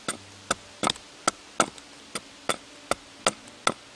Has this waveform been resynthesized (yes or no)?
no